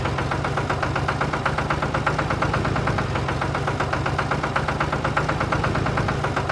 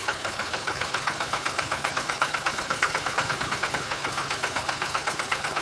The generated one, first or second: second